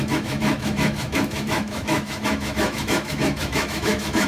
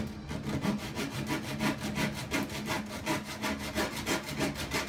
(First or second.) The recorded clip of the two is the second